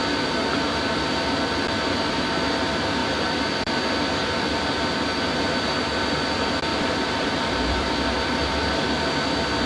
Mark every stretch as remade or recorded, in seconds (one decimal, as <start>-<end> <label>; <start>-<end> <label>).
0.0-3.0 recorded; 3.0-3.7 remade; 3.7-4.2 recorded; 4.2-6.1 remade; 6.1-6.7 recorded; 6.7-8.9 remade; 8.9-9.7 recorded